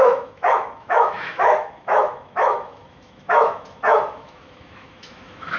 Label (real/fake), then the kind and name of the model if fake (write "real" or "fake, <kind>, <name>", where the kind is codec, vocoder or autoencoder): fake, autoencoder, DAC-VAE